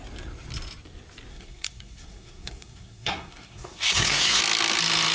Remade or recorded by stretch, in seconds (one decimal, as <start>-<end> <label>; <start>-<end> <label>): 0.0-1.3 recorded; 1.3-4.4 remade; 4.4-5.1 recorded